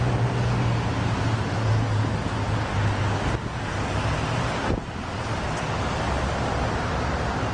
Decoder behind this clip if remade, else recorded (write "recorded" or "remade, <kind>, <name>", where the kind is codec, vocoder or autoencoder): recorded